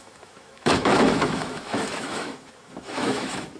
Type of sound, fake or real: fake